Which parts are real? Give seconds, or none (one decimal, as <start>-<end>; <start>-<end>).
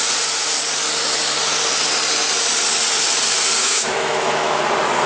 0.0-3.6; 4.6-5.1